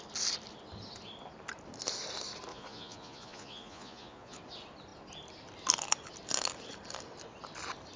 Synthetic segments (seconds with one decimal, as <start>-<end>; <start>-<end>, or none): 2.5-4.4